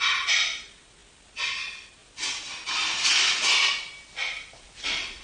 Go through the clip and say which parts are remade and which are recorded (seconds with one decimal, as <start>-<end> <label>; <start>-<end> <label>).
0.0-5.2 recorded